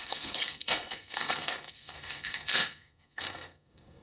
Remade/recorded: remade